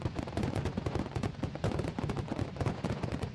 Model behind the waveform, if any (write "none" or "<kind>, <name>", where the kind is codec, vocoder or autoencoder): vocoder, Vocos